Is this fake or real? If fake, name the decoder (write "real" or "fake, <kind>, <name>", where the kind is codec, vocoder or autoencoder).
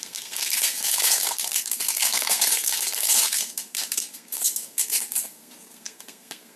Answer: fake, codec, SNAC